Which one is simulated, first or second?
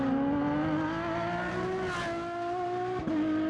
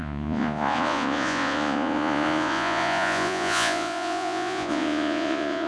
second